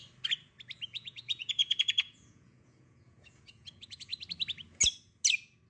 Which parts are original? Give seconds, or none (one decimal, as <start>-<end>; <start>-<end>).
0.0-0.9; 4.1-5.7